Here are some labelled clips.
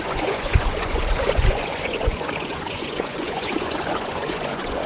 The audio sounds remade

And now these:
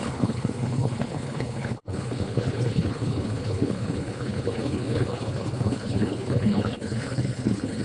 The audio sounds remade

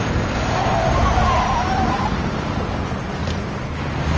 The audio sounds recorded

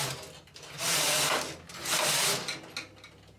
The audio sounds recorded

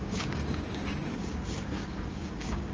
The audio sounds remade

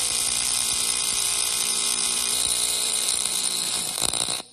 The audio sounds remade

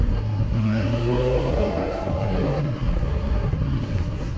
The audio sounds remade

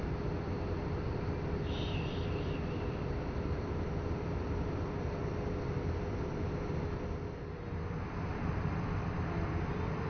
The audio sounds recorded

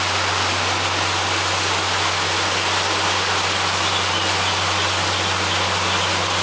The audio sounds recorded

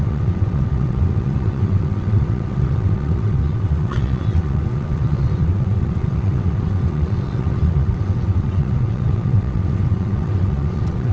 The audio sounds remade